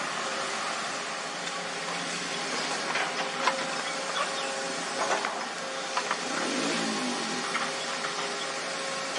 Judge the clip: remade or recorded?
recorded